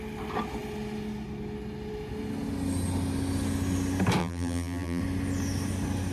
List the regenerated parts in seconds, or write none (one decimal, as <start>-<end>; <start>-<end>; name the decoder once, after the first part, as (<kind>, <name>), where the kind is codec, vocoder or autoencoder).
4.2-5.0 (vocoder, BigVGAN v2)